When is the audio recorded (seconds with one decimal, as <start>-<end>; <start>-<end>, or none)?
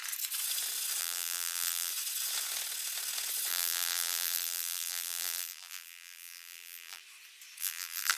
0.0-1.0; 1.9-3.5; 7.0-7.6